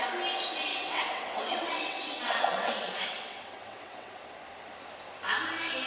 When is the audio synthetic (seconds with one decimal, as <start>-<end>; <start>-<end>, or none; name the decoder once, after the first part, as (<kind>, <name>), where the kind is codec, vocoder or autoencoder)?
0.7-4.2 (vocoder, WaveNeXt)